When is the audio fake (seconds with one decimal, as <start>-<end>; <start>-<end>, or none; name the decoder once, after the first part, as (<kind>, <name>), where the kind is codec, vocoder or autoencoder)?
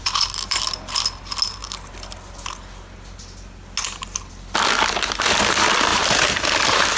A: 5.9-7.0 (vocoder, BigVGAN v2)